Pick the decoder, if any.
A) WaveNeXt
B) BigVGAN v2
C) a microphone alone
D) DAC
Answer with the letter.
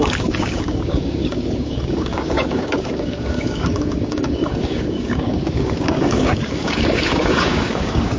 D